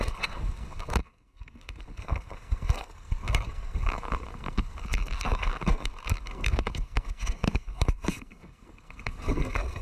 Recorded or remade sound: remade